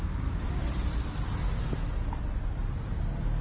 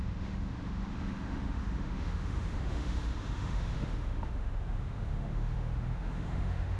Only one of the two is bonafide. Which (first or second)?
first